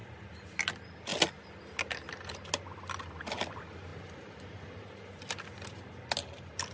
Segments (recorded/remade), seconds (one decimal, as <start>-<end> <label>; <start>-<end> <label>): 0.0-6.7 recorded